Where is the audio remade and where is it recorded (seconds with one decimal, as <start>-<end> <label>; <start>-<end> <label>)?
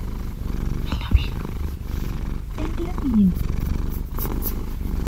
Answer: 0.0-5.1 remade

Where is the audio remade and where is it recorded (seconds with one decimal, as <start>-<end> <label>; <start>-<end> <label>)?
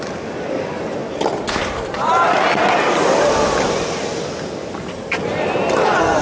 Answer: 0.0-6.2 recorded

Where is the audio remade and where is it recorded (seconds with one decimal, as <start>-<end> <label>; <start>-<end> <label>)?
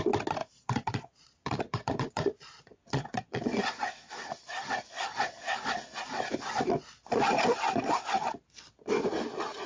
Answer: 0.0-0.4 recorded; 0.4-3.6 remade; 3.6-9.7 recorded